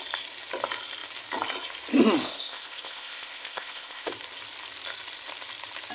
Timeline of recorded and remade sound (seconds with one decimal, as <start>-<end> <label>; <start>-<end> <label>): 0.0-2.2 recorded; 2.2-4.1 remade; 4.1-5.9 recorded